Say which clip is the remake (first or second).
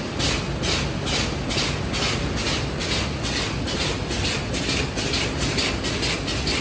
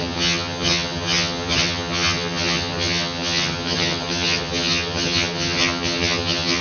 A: second